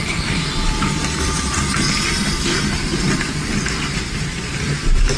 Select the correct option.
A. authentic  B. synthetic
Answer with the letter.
B